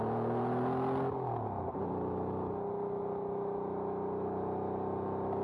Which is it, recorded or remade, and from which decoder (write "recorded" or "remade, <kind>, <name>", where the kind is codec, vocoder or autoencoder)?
recorded